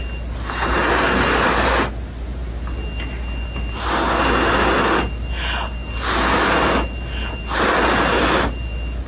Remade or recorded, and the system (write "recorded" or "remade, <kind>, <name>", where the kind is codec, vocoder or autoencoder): recorded